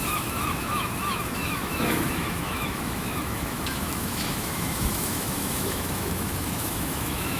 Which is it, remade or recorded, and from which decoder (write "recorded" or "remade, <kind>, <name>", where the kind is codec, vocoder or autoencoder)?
remade, autoencoder, DAC-VAE